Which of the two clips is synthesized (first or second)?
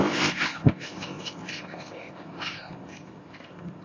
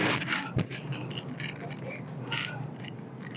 first